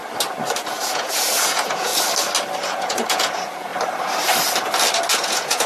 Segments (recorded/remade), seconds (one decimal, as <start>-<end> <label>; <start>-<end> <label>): 0.0-0.6 recorded; 0.6-1.9 remade; 1.9-2.7 recorded; 2.7-3.7 remade; 3.7-5.1 recorded; 5.1-5.7 remade